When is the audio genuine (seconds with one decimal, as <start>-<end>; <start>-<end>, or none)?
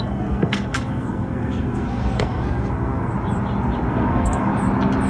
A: 3.1-3.9; 4.5-5.1